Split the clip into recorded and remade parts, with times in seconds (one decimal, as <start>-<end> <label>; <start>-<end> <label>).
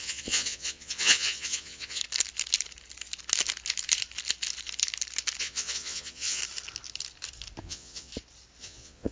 0.0-2.0 remade; 2.0-5.4 recorded; 5.4-6.4 remade; 6.4-7.6 recorded; 7.6-8.1 remade; 8.1-8.6 recorded; 8.6-9.1 remade